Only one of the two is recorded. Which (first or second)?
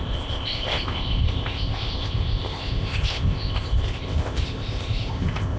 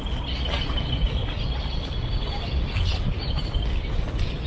second